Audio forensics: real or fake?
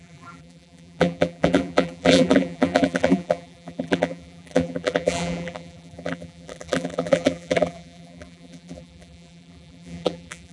fake